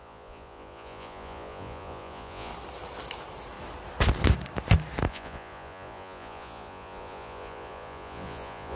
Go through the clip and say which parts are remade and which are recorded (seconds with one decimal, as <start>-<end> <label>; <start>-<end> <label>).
0.0-2.5 remade; 2.5-5.1 recorded; 5.1-8.8 remade